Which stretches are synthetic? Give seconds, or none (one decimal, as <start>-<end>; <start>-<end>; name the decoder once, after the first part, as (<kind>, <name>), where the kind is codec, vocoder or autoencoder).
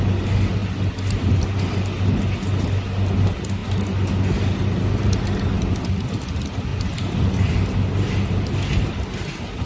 none